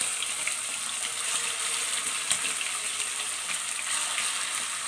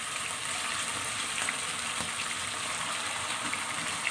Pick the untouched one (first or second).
first